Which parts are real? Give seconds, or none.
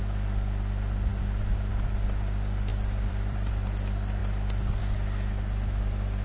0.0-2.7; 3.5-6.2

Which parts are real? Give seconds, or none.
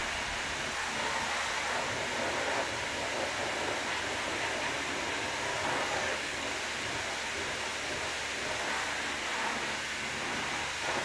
0.0-5.5; 6.5-11.0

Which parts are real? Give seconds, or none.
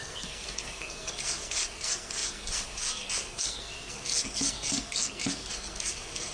none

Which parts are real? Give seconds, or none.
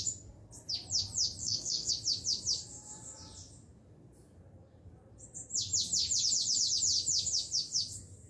0.0-1.4; 1.9-8.3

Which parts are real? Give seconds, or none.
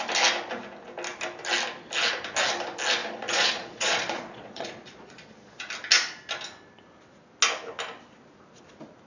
0.0-3.0; 5.6-9.1